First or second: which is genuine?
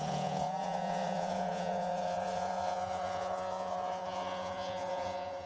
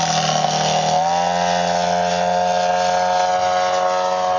second